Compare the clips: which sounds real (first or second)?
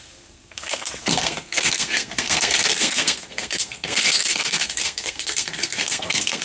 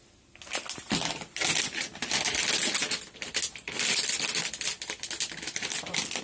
second